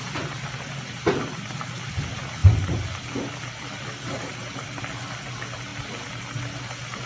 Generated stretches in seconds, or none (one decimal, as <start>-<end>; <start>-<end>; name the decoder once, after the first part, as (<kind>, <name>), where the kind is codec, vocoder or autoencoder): 2.4-4.8 (vocoder, BigVGAN v2)

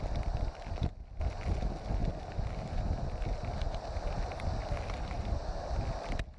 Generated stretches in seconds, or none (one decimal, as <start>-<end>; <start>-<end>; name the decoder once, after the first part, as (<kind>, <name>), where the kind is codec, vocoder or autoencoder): none

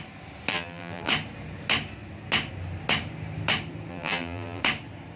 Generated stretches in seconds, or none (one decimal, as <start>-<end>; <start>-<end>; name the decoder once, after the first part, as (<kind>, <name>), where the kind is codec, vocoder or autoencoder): 0.5-1.1 (vocoder, BigVGAN v2); 3.9-4.6

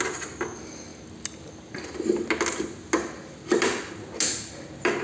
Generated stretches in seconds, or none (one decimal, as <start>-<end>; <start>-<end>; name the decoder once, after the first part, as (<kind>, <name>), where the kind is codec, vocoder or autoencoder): none

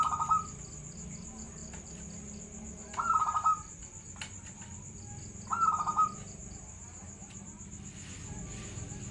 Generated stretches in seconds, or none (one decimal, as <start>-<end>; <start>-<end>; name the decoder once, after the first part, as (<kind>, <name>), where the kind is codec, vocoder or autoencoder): 5.9-7.6 (vocoder, BigVGAN v2)

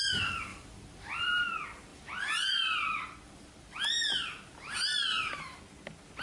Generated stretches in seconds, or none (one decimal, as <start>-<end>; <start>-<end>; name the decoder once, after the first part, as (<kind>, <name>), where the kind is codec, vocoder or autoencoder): 0.5-1.4 (vocoder, BigVGAN v2); 1.9-5.6

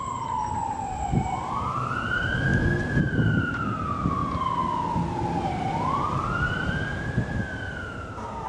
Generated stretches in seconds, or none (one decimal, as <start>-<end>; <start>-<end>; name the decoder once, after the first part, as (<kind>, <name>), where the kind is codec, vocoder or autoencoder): 0.0-2.5 (vocoder, BigVGAN v2); 3.0-4.2; 7.9-8.5

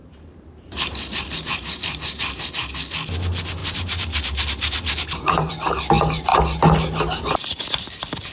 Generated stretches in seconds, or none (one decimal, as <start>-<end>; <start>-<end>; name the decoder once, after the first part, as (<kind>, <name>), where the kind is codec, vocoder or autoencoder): 0.0-2.5 (vocoder, BigVGAN v2); 3.6-5.5